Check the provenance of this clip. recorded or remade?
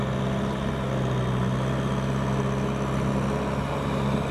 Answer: recorded